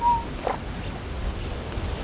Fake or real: real